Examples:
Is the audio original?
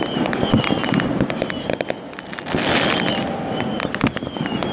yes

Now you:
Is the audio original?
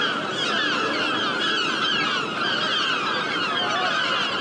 no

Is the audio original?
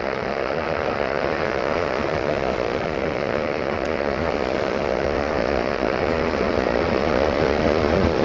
no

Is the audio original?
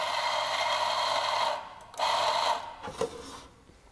yes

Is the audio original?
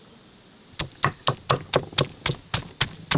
yes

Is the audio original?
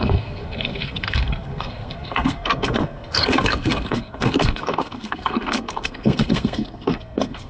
no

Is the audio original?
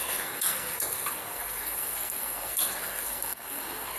no